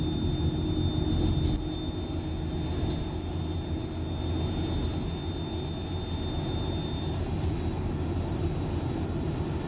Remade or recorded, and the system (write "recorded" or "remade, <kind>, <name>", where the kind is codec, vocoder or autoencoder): recorded